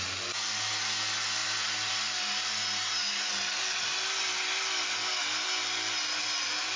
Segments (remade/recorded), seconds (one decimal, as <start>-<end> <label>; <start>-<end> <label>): 0.0-6.8 recorded